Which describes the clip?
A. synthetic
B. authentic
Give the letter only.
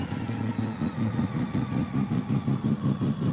A